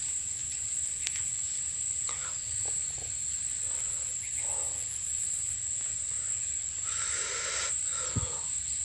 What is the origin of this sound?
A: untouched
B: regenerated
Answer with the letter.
A